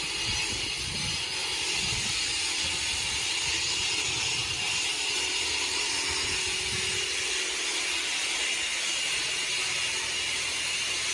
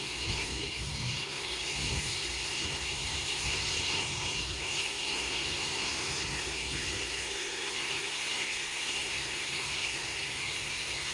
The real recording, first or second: first